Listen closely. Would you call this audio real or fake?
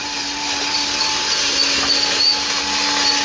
real